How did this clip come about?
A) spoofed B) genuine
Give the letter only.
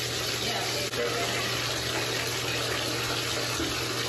B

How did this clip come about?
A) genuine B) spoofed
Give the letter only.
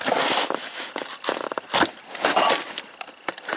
B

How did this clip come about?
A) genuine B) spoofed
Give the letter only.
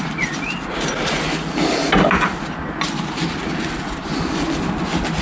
A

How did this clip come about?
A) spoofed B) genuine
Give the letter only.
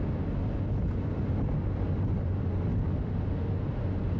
B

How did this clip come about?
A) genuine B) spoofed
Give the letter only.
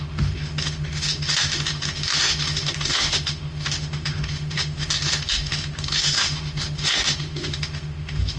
B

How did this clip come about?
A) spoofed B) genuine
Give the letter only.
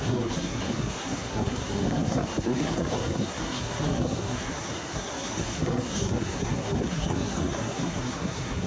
A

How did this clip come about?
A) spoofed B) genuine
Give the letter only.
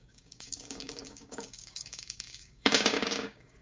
A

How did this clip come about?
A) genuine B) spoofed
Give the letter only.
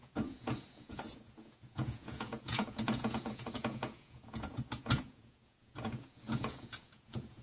B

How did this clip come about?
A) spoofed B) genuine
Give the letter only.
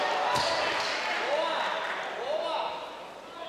B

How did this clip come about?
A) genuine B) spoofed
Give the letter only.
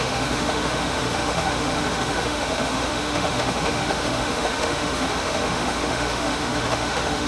B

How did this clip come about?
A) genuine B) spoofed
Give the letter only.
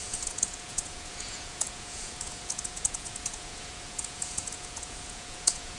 B